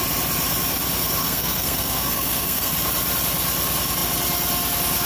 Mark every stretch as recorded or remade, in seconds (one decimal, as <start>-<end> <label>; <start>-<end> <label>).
0.0-1.2 recorded; 1.2-2.7 remade; 2.7-5.1 recorded